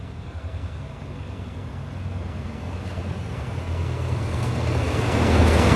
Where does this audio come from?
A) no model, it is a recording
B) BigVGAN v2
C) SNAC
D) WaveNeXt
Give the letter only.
C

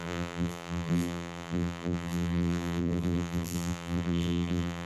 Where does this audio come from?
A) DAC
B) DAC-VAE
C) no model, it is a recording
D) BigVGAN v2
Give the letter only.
D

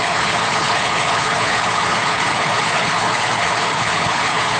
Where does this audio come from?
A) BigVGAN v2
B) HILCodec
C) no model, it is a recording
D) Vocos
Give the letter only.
B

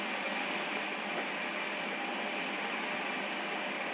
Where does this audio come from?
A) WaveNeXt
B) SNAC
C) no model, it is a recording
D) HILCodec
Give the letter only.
C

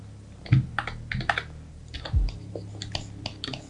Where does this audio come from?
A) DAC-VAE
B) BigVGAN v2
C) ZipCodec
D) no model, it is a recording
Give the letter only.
D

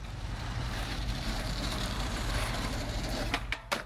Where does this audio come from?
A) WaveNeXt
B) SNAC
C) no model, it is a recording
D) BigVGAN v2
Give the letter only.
D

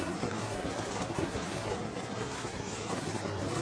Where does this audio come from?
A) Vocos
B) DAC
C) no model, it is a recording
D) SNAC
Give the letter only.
D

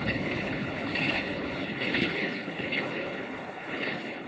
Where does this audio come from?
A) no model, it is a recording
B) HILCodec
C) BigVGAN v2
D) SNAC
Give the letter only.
B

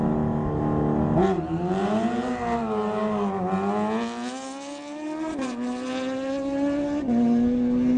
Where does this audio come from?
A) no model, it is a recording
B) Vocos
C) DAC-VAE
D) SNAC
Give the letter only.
A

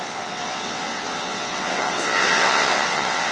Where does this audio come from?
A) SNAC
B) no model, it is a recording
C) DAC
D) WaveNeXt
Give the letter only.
D